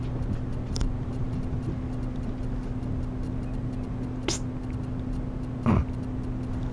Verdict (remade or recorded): recorded